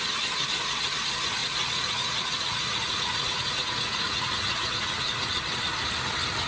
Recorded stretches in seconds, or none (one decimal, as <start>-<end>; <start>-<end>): 0.0-1.4; 5.3-6.5